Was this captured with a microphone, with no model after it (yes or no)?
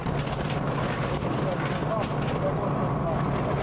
yes